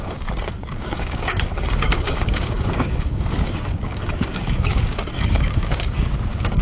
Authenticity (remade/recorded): remade